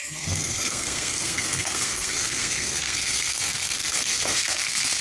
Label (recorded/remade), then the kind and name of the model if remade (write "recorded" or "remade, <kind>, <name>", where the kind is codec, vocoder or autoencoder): remade, codec, SNAC